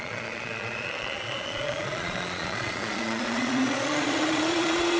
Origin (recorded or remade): remade